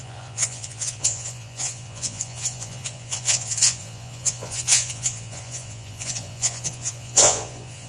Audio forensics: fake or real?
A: fake